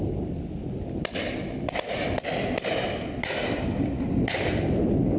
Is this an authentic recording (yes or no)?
yes